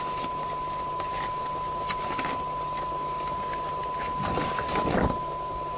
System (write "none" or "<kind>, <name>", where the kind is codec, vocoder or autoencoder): none